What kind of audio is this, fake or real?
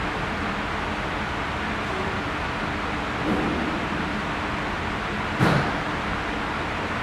real